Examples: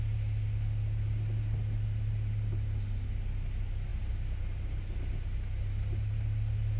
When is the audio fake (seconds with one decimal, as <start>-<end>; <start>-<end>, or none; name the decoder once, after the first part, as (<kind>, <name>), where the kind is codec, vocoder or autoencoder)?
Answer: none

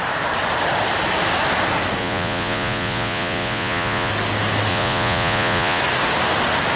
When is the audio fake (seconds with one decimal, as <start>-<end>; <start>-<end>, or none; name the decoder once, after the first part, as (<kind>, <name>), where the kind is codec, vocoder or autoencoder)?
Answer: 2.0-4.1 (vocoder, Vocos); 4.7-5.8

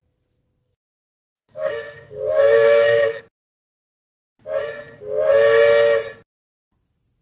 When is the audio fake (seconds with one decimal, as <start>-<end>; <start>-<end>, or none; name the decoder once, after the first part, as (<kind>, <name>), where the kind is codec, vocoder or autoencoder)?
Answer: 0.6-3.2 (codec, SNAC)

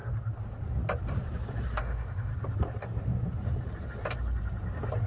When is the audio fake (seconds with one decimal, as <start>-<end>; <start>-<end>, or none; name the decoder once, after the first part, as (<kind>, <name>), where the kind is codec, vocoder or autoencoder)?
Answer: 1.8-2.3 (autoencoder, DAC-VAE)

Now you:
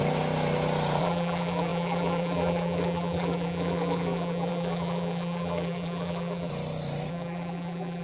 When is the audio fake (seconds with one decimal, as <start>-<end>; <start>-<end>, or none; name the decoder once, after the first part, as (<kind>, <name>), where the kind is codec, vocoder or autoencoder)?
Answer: 1.0-6.5 (vocoder, BigVGAN v2); 7.1-8.0